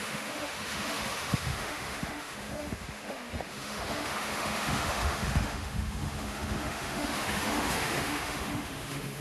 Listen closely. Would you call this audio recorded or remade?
remade